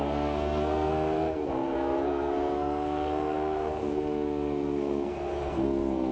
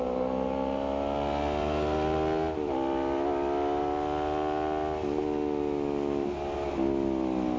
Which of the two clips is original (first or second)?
second